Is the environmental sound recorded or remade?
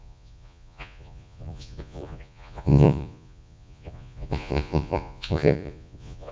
remade